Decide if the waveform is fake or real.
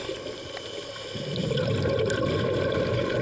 real